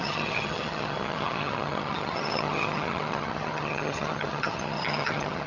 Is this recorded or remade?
remade